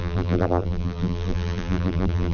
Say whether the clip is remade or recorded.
remade